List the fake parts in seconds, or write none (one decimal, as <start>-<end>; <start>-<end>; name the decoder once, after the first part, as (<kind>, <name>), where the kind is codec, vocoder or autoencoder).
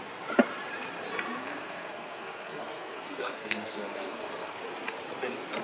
1.4-4.6 (codec, SNAC)